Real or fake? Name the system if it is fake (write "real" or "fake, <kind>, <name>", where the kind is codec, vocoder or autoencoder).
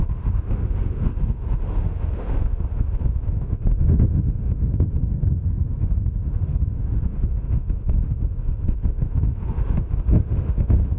fake, autoencoder, DAC-VAE